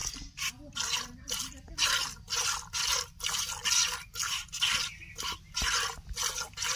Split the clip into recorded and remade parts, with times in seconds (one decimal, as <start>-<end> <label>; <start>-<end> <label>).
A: 0.0-6.8 recorded